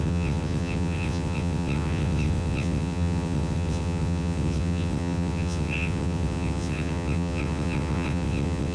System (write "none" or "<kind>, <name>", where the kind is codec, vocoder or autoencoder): vocoder, WaveNeXt